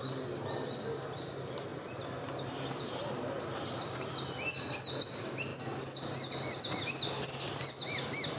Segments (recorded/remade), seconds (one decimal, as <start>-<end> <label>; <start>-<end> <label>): 0.0-8.4 recorded

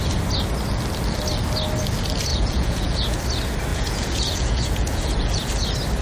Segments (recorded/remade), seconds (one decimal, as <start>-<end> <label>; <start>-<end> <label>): 0.0-2.3 recorded; 2.3-3.2 remade; 3.2-3.7 recorded; 3.7-5.5 remade; 5.5-6.0 recorded

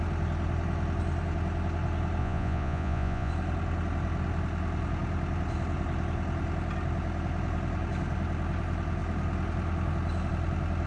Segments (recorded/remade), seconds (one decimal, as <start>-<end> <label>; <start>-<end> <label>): 0.0-2.2 recorded; 2.2-3.3 remade; 3.3-10.9 recorded

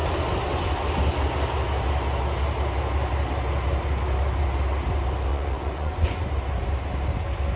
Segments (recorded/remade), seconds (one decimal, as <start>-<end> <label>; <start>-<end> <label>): 0.0-5.3 recorded; 5.3-6.3 remade; 6.3-7.6 recorded

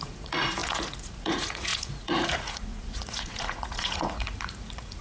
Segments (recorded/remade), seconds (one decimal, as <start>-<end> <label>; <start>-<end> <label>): 0.0-5.0 remade

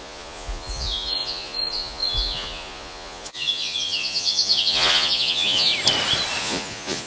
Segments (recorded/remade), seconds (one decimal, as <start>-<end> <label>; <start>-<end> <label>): 0.0-5.7 remade; 5.7-6.4 recorded; 6.4-7.1 remade

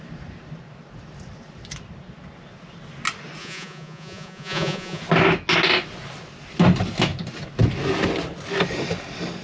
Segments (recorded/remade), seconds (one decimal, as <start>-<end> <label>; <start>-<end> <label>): 0.0-3.4 recorded; 3.4-5.0 remade; 5.0-9.4 recorded